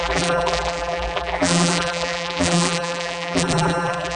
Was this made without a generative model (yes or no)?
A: no